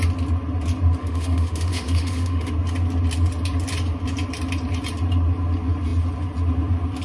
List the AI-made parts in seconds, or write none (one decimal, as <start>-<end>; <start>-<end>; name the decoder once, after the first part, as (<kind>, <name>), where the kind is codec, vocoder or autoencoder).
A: 1.0-2.5 (autoencoder, DAC-VAE)